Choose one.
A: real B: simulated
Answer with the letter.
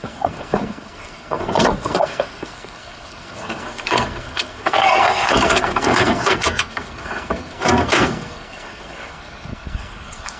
B